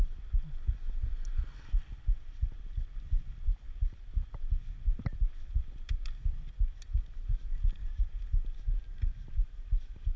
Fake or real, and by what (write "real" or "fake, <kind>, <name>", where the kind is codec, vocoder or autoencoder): real